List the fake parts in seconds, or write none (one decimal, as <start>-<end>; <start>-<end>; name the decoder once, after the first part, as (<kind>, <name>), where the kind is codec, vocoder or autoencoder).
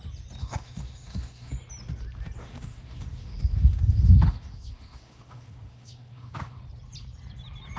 0.4-1.5 (autoencoder, DAC-VAE); 2.4-6.6